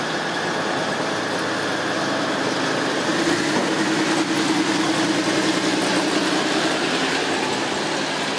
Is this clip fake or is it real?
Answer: real